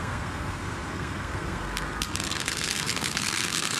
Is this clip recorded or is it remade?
remade